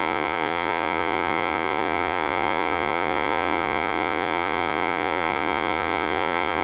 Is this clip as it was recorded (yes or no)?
no